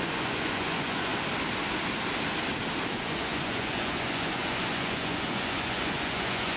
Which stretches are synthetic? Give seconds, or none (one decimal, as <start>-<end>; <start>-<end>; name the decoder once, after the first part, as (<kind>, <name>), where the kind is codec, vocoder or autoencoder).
0.0-1.1 (vocoder, Vocos); 2.9-6.6